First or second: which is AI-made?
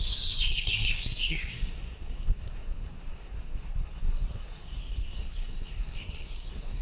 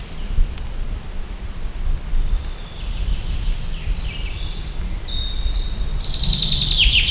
first